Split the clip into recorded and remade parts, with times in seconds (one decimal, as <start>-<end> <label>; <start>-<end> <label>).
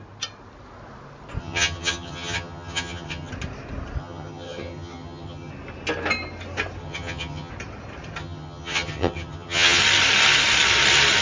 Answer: 0.0-1.4 recorded; 1.4-3.3 remade; 3.3-4.0 recorded; 4.0-5.5 remade; 5.5-6.8 recorded; 6.8-7.5 remade; 7.5-8.2 recorded; 8.2-9.8 remade; 9.8-11.2 recorded